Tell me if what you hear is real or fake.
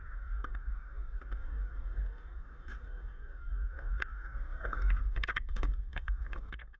fake